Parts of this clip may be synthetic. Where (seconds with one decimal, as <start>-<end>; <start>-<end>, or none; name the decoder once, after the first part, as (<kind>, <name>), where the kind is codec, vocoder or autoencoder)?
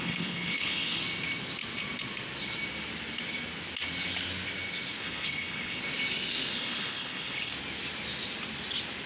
0.0-1.0 (codec, HILCodec); 5.0-5.8; 6.5-7.5